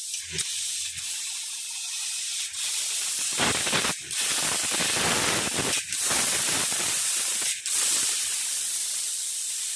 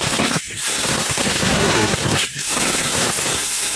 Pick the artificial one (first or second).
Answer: second